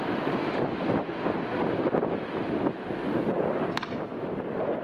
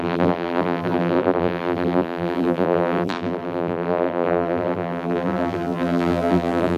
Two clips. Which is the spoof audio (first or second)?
second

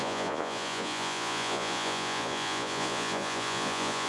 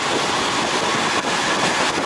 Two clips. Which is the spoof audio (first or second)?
first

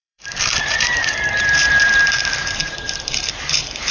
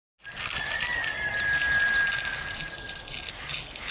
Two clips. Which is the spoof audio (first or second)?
first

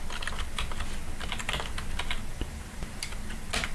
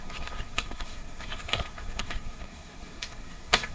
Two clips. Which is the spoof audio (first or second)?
second